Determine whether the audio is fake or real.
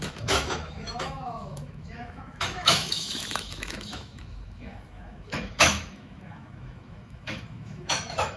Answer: fake